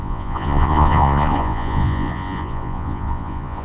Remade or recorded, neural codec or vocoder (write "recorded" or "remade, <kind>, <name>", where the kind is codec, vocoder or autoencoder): remade, vocoder, Vocos